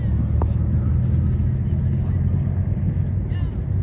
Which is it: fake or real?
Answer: real